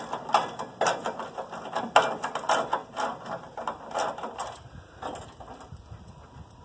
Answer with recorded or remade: recorded